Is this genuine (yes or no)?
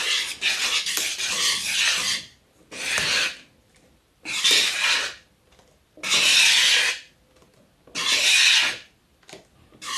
yes